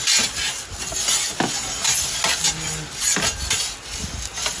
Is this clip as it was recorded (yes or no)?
yes